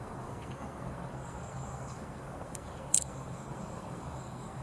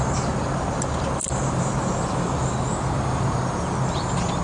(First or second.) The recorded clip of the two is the second